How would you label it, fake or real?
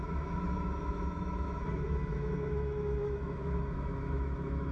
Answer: fake